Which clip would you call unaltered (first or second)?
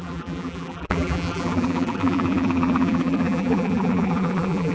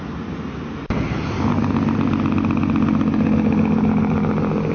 second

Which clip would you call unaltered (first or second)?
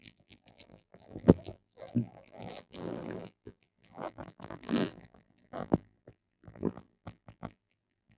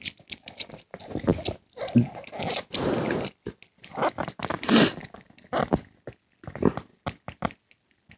second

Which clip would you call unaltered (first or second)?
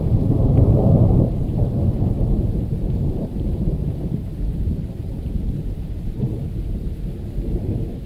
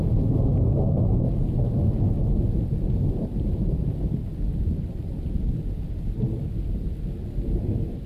second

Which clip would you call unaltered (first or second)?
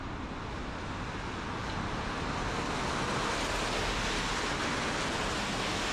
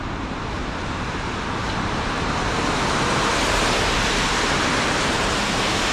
first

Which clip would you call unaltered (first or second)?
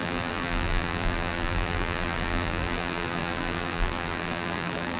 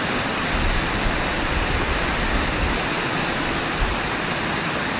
second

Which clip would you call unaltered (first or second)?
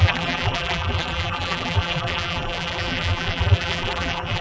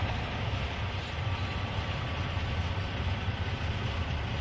second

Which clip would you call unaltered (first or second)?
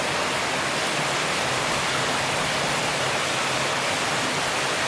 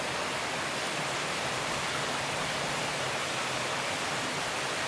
first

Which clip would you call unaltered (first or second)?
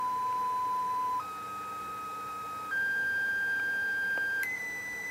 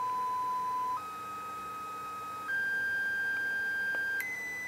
second